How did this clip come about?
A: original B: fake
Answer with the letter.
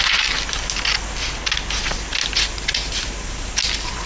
A